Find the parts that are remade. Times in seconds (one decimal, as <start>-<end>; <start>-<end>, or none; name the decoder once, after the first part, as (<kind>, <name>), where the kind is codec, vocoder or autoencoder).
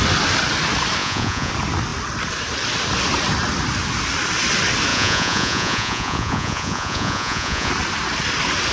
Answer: 1.0-1.5 (vocoder, Vocos); 4.9-7.7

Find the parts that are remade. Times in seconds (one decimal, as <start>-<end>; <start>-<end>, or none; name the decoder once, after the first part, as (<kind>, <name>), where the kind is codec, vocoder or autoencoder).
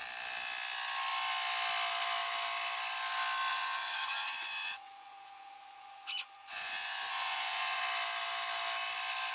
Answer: 3.5-7.8 (vocoder, Vocos)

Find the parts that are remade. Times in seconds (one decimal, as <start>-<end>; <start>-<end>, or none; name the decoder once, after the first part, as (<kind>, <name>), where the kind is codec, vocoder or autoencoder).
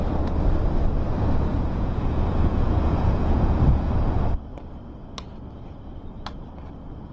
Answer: 1.5-3.9 (vocoder, Vocos)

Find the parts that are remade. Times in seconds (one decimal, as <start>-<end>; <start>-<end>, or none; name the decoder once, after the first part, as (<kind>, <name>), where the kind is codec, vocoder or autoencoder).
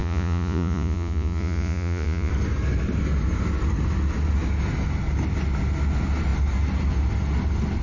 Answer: 0.0-2.3 (vocoder, Vocos)